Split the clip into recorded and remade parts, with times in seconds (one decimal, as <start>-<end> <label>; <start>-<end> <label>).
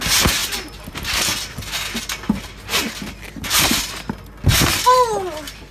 0.0-5.7 recorded